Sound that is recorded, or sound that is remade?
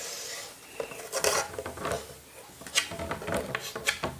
recorded